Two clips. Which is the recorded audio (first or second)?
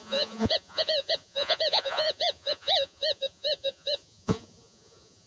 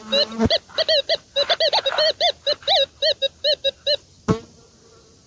second